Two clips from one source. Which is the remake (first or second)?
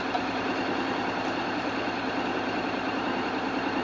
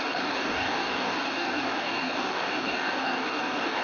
second